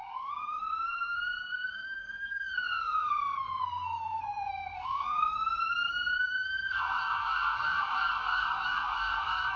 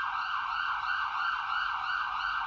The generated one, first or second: first